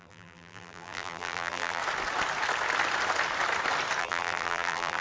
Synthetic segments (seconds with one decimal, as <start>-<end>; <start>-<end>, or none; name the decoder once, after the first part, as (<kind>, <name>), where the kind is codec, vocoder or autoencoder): 0.0-1.8 (vocoder, BigVGAN v2); 4.0-5.0